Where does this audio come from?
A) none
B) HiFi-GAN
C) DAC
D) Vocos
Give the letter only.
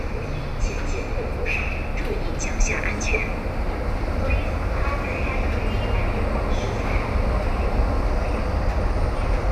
A